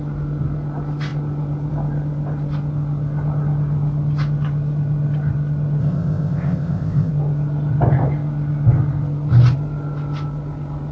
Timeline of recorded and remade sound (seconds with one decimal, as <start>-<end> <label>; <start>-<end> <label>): 0.0-5.8 recorded; 5.8-7.1 remade; 7.1-10.9 recorded